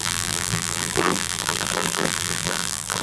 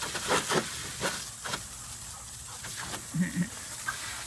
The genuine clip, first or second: second